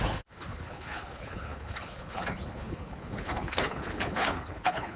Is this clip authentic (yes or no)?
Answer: no